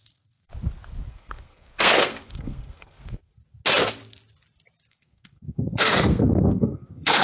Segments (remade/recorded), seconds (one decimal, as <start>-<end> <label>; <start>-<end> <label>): 0.0-0.5 remade; 0.5-1.1 recorded; 1.1-3.3 remade; 3.3-4.9 recorded; 4.9-7.2 remade